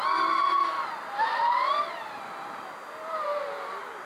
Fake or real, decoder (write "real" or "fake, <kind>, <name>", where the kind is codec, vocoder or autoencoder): real